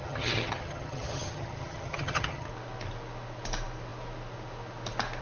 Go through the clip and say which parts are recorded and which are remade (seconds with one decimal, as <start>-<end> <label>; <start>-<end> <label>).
0.0-2.5 remade; 2.5-5.2 recorded